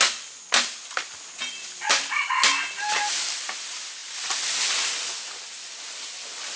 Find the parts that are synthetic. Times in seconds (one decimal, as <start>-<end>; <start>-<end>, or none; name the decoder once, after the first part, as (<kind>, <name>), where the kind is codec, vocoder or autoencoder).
none

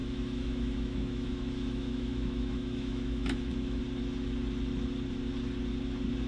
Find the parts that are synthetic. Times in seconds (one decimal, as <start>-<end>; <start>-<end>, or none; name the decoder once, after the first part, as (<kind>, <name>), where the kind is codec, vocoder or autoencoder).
0.0-3.8 (autoencoder, DAC-VAE)